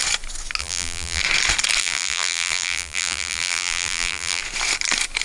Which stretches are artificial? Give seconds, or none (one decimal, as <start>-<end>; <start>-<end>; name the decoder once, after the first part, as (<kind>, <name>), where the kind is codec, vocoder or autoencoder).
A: 0.6-1.2 (vocoder, BigVGAN v2); 1.8-4.4